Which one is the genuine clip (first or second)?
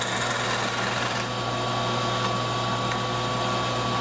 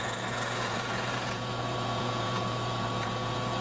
first